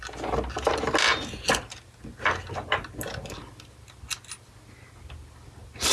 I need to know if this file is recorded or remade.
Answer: recorded